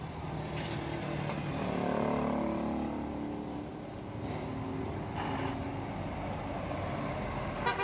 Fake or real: real